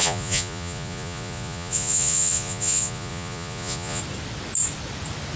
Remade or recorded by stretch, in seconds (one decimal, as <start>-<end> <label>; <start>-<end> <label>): 0.0-4.0 remade; 4.0-5.4 recorded